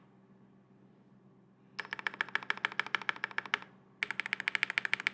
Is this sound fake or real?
real